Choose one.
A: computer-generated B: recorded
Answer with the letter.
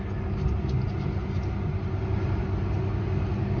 B